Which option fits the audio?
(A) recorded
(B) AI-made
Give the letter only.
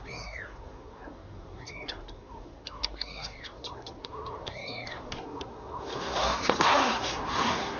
B